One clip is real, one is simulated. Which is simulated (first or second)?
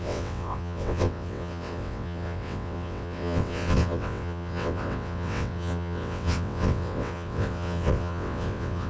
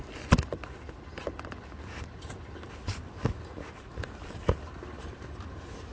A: first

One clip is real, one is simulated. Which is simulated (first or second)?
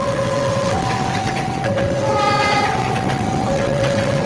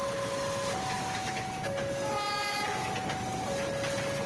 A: first